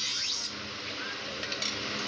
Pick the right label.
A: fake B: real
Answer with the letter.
B